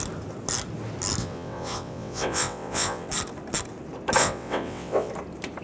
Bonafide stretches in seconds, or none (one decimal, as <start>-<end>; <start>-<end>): 0.0-1.2; 3.1-4.2; 5.1-5.6

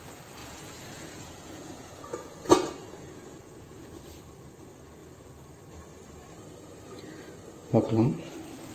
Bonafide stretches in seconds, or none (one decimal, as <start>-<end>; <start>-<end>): 0.0-0.4; 4.0-8.7